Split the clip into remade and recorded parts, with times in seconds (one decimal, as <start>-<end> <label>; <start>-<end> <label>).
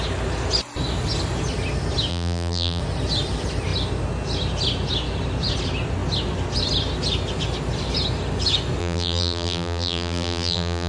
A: 0.0-2.1 recorded; 2.1-2.8 remade; 2.8-8.8 recorded; 8.8-10.9 remade